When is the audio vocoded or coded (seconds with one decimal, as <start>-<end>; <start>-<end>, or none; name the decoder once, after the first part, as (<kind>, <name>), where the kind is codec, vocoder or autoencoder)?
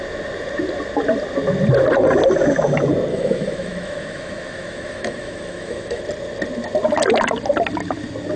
3.1-6.0 (autoencoder, DAC-VAE)